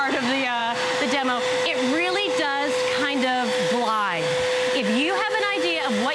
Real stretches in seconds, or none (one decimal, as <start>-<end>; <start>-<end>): 0.0-6.1